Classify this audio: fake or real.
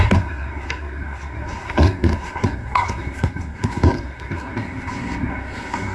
fake